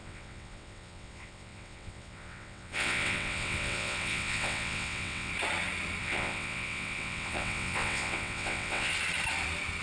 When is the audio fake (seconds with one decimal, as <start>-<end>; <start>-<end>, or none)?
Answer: 0.0-5.3; 6.0-8.9